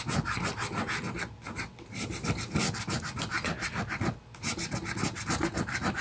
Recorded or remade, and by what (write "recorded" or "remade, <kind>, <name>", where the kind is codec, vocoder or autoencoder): recorded